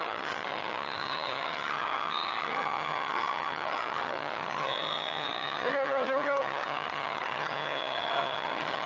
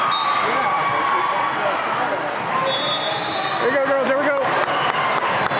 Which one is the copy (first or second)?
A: first